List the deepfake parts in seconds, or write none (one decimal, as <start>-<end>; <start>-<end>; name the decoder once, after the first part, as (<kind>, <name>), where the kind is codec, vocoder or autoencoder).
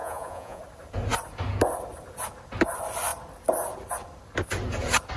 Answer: 0.0-0.6 (vocoder, Vocos)